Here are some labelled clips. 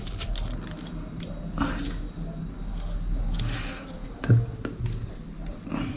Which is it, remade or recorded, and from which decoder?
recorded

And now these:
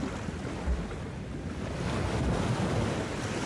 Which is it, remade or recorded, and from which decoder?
recorded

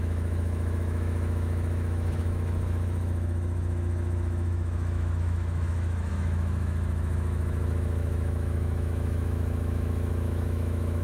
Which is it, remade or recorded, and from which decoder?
remade, autoencoder, DAC-VAE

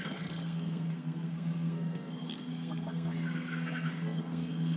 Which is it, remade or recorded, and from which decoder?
remade, codec, SNAC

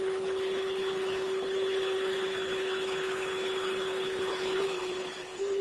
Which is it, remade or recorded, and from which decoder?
remade, codec, HILCodec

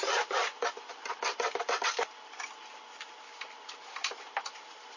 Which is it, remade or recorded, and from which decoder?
remade, vocoder, BigVGAN v2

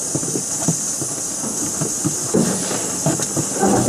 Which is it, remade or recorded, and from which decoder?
recorded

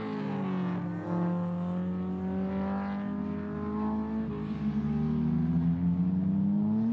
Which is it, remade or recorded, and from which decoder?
recorded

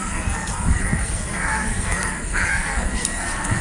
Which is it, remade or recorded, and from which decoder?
remade, codec, SNAC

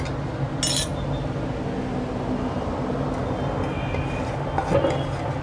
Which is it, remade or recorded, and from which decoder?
recorded